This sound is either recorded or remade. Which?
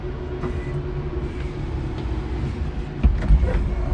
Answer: recorded